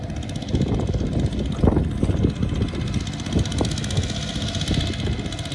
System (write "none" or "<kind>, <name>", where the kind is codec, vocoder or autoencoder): none